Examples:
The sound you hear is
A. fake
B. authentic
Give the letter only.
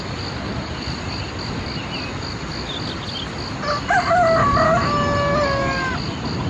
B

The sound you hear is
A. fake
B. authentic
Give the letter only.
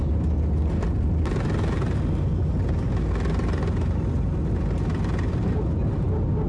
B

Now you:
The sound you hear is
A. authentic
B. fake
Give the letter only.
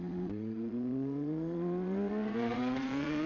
B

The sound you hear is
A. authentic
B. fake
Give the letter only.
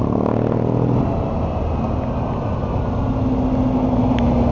A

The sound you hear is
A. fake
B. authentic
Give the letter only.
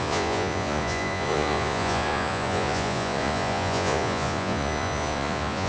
A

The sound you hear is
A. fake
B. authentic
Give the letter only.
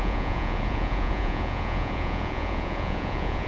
A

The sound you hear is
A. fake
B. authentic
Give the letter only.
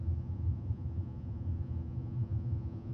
A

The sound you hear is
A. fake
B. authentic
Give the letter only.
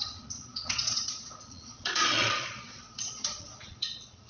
A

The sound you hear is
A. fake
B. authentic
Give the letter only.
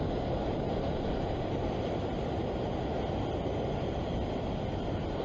B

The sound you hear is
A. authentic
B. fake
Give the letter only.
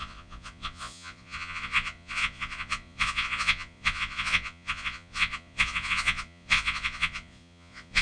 B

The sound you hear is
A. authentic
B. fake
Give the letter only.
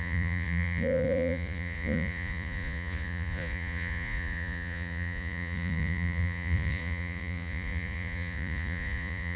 B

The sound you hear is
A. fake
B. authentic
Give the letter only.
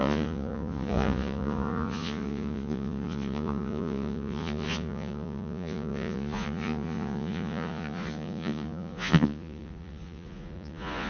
A